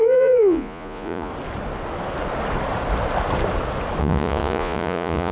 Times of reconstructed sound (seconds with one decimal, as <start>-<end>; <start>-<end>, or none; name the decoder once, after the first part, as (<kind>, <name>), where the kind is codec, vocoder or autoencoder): 0.0-1.3 (vocoder, Vocos); 4.0-5.3